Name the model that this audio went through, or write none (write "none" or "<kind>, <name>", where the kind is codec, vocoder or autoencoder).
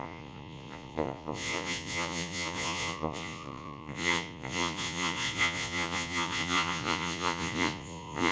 vocoder, Vocos